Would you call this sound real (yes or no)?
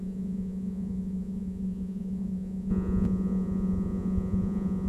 no